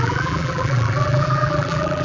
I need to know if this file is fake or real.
fake